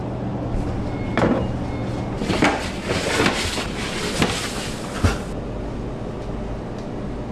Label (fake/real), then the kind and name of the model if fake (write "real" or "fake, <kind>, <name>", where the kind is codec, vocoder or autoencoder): real